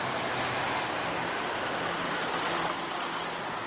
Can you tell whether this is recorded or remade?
recorded